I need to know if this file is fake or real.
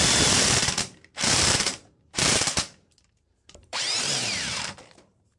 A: fake